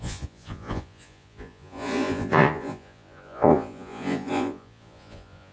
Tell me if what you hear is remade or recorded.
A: remade